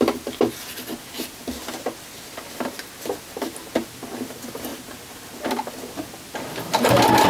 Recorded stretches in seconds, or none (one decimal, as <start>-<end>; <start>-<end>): 0.0-7.3